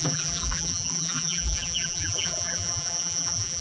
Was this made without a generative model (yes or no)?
no